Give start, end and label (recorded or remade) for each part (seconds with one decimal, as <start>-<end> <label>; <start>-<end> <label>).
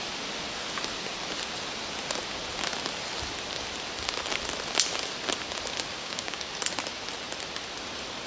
0.0-6.0 recorded; 6.0-6.5 remade; 6.5-8.3 recorded